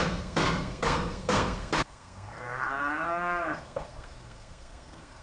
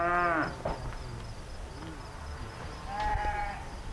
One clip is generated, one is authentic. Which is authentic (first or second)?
second